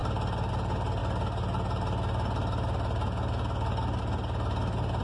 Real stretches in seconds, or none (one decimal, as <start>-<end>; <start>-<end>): 0.0-5.0